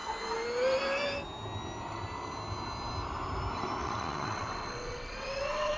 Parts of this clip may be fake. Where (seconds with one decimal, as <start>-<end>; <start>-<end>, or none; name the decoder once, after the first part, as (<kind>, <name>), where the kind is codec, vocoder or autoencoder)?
3.8-5.8 (vocoder, WaveNeXt)